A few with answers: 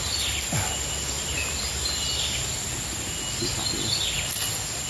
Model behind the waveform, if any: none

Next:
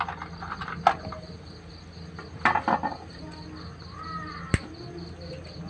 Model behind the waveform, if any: none